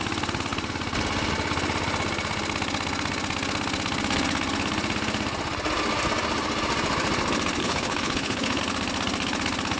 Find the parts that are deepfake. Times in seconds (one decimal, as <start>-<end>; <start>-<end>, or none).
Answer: 7.6-8.6